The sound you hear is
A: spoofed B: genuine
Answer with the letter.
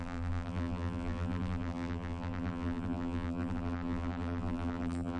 A